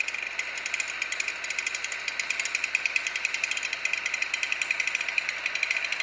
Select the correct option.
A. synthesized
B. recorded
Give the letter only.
B